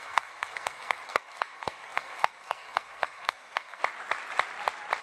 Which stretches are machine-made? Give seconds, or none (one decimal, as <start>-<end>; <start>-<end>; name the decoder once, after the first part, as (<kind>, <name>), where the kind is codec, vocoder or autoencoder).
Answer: 0.0-3.8 (codec, SNAC)